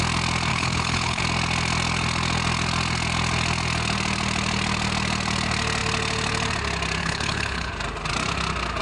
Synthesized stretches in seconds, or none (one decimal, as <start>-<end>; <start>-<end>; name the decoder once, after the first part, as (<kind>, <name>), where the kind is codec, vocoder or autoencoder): 0.5-1.2 (codec, HILCodec); 7.0-7.7